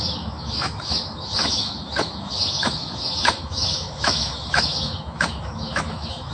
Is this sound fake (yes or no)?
yes